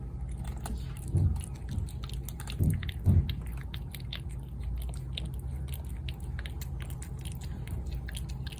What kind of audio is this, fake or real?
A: real